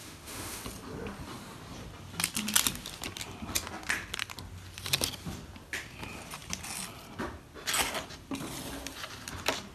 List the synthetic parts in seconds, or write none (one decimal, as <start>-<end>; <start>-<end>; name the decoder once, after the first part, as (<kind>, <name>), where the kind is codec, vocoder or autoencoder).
0.0-0.6 (autoencoder, DAC-VAE)